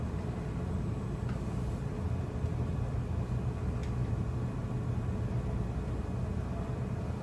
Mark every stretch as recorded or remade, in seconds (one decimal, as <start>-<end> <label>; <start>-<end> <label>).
0.0-3.8 recorded; 3.8-4.4 remade; 4.4-7.2 recorded